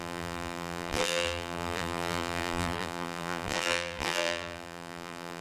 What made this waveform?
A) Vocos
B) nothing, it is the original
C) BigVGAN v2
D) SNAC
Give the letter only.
C